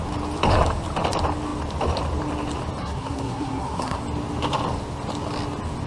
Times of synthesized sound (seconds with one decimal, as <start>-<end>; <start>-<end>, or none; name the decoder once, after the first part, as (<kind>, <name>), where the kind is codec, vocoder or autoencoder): 2.8-4.0 (codec, SNAC)